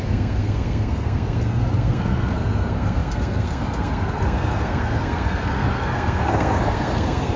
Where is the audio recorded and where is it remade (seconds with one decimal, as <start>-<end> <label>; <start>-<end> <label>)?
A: 0.0-7.4 remade